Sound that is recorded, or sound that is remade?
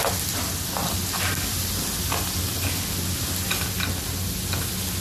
recorded